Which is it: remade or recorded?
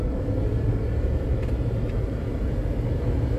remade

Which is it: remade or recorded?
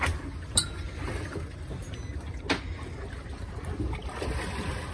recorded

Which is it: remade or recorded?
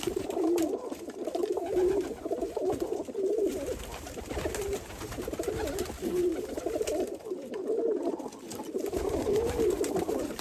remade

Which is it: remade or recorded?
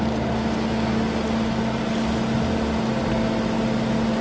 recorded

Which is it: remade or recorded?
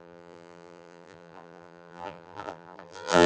remade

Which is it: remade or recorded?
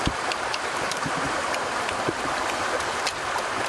remade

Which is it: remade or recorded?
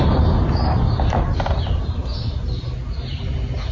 recorded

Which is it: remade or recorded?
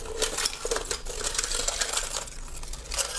recorded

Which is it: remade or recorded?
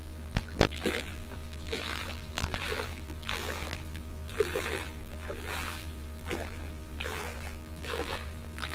remade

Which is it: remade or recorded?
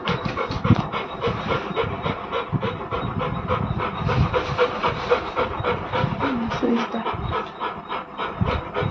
recorded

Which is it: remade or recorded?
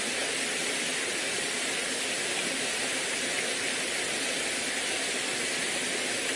recorded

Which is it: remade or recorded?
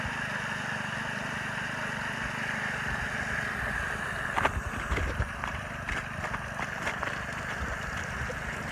recorded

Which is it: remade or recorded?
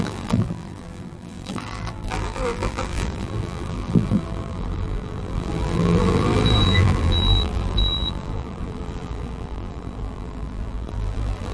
remade